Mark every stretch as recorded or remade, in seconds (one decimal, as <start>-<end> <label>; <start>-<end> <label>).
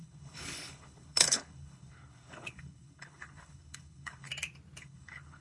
0.0-4.3 remade; 4.3-4.8 recorded; 4.8-5.4 remade